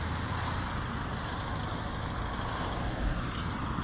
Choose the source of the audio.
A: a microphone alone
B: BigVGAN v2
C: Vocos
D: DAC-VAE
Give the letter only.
A